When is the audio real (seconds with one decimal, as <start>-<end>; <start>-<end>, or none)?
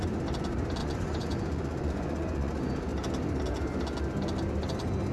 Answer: 0.0-0.8; 2.5-5.1